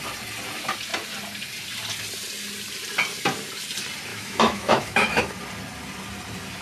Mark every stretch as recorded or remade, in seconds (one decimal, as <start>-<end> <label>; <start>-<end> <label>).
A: 0.0-4.1 recorded; 4.1-5.2 remade; 5.2-6.6 recorded